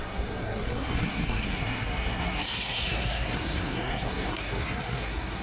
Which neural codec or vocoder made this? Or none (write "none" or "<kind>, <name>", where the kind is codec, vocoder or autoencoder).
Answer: codec, SNAC